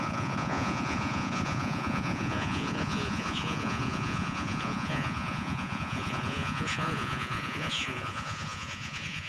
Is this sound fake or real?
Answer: fake